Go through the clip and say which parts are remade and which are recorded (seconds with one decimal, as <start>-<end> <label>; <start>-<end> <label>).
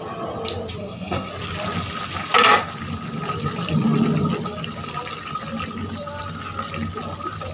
0.0-0.8 recorded; 0.8-1.3 remade; 1.3-7.5 recorded